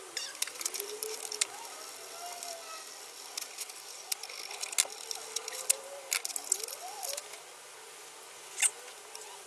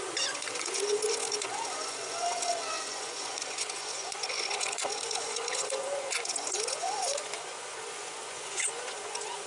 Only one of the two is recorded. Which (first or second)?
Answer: first